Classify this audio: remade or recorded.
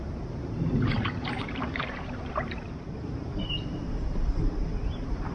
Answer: remade